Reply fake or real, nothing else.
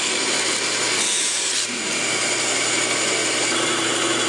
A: real